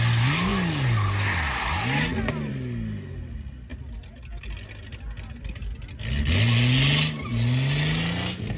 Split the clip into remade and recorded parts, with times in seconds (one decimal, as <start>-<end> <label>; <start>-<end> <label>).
0.0-8.6 recorded